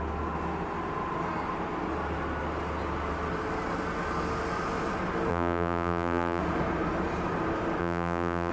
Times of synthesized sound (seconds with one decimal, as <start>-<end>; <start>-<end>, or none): 5.3-6.4; 7.8-8.5